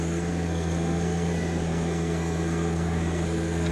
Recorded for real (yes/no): no